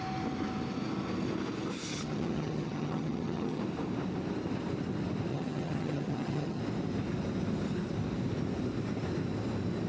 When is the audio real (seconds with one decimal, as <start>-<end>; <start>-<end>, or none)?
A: 0.0-1.9; 3.6-5.3; 6.6-9.9